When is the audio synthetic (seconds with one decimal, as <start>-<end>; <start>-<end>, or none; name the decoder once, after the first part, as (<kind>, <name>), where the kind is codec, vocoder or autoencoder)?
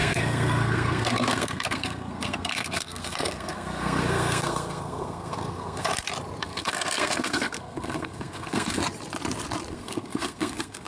0.0-5.9 (codec, SNAC); 6.4-8.8; 9.7-10.9